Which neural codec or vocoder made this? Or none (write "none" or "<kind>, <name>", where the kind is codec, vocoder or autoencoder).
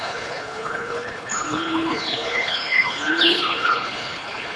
codec, HILCodec